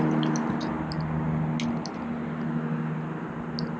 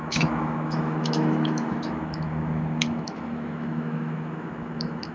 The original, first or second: first